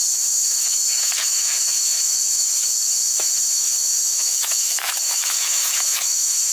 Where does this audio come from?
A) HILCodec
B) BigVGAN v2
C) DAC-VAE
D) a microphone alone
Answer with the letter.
C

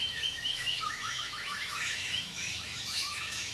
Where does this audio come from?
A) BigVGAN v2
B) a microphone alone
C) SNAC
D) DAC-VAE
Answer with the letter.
D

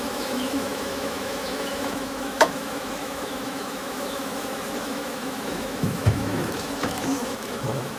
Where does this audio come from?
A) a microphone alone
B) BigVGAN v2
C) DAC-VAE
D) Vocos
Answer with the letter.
C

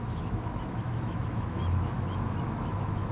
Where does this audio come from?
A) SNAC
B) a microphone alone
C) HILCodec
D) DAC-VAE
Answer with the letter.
D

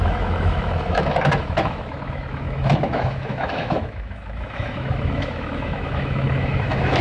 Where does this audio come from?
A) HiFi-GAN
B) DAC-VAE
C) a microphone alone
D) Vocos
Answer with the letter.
B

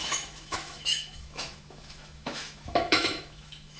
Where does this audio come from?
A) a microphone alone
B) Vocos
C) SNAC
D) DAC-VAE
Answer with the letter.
D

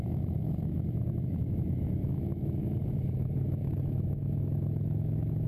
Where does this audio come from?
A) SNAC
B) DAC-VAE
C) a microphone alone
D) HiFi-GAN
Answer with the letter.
B